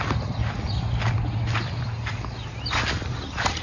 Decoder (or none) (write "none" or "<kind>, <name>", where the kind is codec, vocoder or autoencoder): none